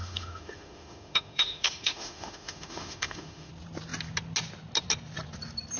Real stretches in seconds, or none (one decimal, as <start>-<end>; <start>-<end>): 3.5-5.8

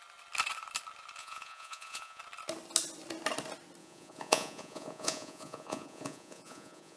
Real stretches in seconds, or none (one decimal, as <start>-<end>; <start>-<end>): 0.0-1.2; 2.2-3.8

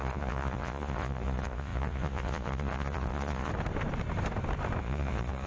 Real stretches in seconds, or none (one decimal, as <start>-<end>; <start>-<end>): 3.5-4.8

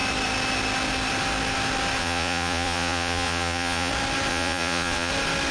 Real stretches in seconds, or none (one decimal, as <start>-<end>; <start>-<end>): 0.0-2.0; 3.9-4.3; 5.1-5.5